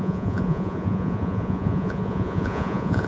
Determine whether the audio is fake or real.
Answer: fake